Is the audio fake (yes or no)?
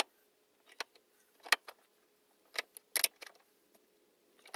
no